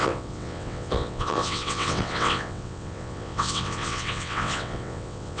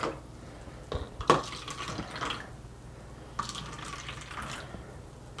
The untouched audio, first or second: second